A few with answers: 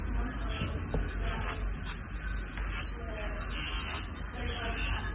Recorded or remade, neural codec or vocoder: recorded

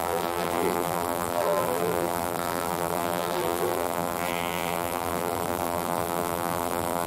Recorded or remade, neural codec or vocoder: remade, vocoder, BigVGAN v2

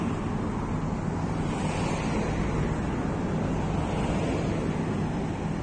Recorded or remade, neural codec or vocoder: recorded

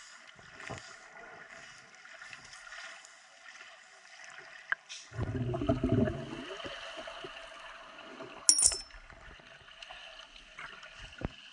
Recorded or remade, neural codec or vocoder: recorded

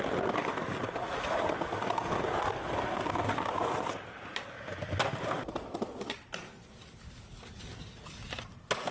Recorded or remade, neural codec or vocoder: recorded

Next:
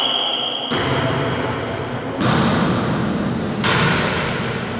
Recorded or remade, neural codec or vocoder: recorded